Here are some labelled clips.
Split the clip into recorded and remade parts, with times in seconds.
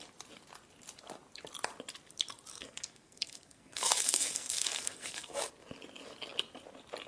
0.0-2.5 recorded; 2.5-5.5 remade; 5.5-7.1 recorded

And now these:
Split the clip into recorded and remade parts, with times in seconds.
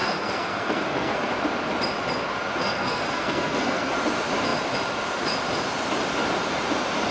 0.0-1.3 remade; 1.3-2.6 recorded; 2.6-3.9 remade; 3.9-7.1 recorded